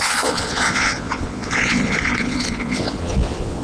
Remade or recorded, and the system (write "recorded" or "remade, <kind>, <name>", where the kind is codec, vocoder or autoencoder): remade, vocoder, Vocos